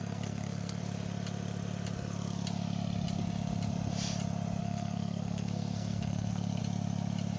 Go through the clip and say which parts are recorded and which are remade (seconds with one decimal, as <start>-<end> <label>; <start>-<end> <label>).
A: 0.0-0.8 remade; 0.8-4.6 recorded; 4.6-6.6 remade; 6.6-7.4 recorded